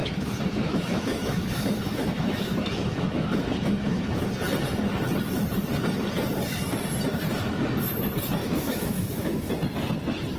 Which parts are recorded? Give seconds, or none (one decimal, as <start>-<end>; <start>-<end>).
4.3-8.4; 9.5-10.4

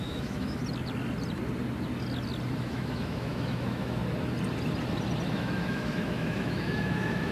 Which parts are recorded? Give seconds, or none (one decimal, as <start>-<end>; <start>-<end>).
0.6-2.6; 4.0-5.3